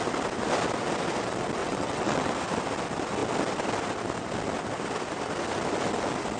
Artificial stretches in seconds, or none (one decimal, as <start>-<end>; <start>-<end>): 1.6-2.3